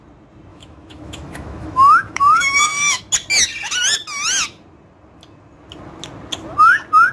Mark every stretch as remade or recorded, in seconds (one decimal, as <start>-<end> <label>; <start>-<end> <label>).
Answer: 0.0-0.5 recorded; 0.5-3.0 remade; 3.0-7.1 recorded